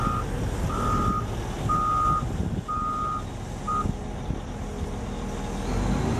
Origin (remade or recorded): recorded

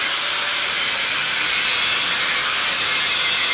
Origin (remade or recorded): remade